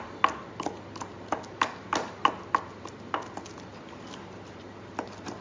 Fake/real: real